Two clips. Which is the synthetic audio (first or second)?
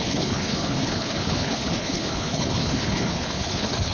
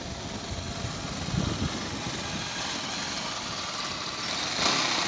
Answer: first